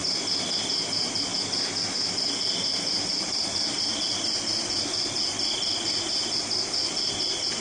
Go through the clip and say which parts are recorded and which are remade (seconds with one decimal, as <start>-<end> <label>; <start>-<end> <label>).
0.0-2.9 recorded; 2.9-7.6 remade